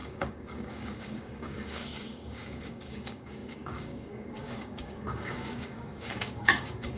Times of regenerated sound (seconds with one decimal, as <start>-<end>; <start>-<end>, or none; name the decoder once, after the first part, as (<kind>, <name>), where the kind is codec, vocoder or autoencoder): 0.0-7.0 (codec, DAC)